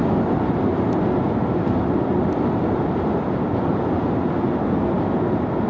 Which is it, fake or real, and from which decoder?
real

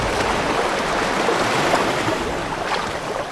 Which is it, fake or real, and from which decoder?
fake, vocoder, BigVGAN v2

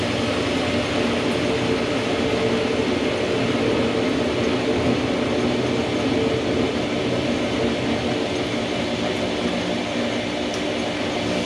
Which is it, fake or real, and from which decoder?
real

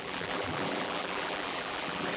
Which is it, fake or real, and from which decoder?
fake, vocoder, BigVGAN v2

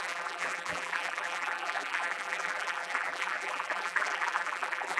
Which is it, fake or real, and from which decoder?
fake, vocoder, BigVGAN v2